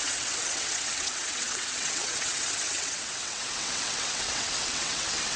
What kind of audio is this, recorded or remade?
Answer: remade